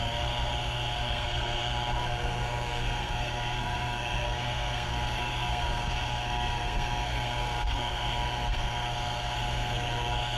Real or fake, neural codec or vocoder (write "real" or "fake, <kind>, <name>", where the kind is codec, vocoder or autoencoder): fake, codec, SNAC